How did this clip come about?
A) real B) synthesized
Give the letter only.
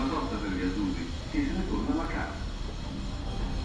A